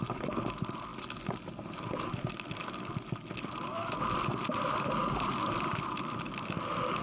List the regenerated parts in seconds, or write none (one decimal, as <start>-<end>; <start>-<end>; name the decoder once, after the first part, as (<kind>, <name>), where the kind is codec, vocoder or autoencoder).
none